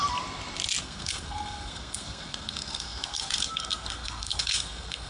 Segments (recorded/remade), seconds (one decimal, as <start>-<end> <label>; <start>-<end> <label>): 0.0-0.8 recorded; 0.8-5.1 remade